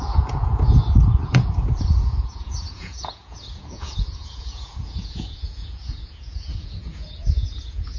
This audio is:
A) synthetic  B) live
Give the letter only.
A